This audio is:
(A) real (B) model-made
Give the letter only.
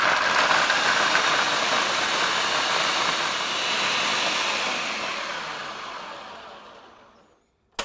A